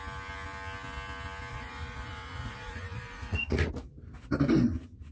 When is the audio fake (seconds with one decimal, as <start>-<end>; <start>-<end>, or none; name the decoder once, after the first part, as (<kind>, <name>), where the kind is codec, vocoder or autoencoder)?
1.5-3.7 (vocoder, Vocos)